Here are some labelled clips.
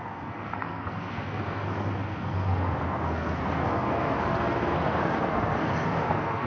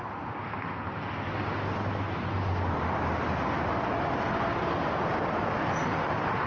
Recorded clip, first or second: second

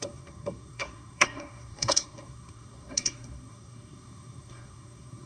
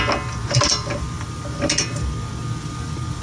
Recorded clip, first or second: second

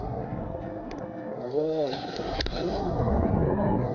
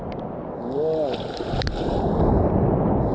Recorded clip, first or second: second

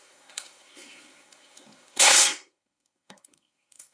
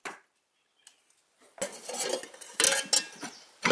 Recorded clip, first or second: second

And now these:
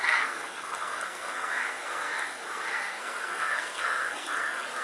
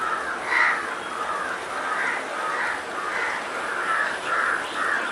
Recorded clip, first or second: second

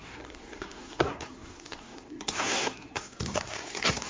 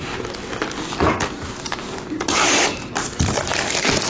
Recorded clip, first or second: second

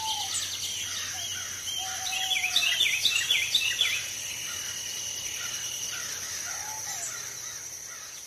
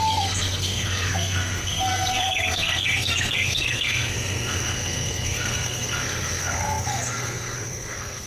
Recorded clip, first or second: first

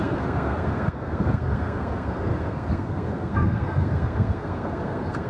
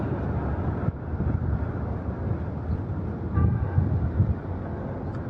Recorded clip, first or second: second